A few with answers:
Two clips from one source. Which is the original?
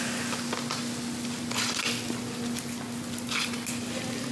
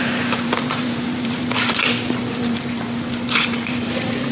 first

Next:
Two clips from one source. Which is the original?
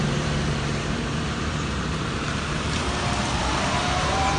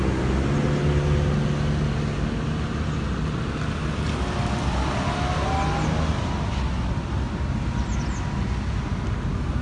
second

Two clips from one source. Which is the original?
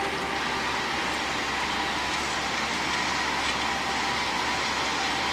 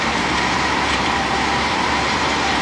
first